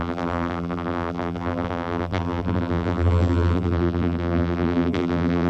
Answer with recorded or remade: remade